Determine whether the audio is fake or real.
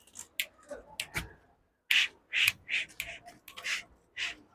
real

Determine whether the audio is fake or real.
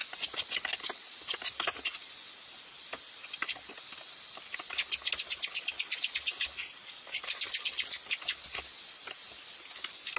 real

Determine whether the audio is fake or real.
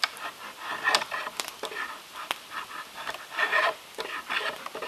fake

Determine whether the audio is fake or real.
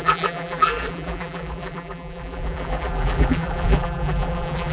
fake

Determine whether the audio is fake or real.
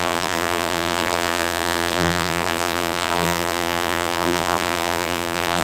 fake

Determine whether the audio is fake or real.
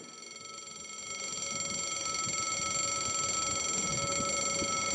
real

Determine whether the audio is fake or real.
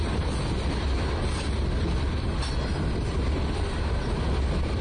real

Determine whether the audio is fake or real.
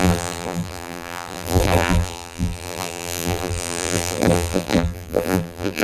fake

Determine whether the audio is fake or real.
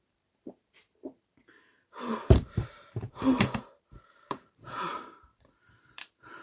fake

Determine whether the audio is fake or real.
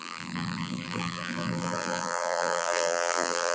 fake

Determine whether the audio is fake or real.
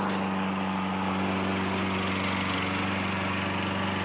real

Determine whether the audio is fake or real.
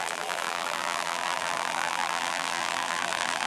fake